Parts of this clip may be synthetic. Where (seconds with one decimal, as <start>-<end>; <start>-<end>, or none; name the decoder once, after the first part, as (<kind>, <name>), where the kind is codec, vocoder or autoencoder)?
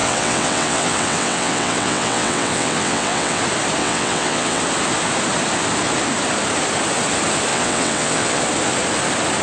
0.0-3.4 (vocoder, WaveNeXt); 3.8-4.6; 7.5-8.4